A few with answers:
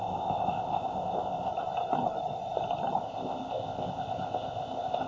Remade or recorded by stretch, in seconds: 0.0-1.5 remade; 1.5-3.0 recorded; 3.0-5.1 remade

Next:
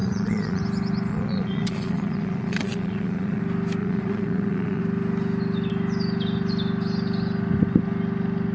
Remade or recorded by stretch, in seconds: 0.0-0.6 remade; 0.6-1.1 recorded; 1.1-3.4 remade; 3.4-3.8 recorded; 3.8-4.8 remade; 4.8-8.5 recorded

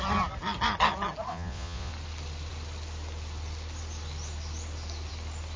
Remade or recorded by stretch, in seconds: 0.0-1.3 recorded; 1.3-1.9 remade; 1.9-5.6 recorded

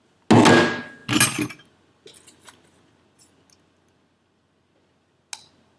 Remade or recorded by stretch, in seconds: 0.0-5.8 recorded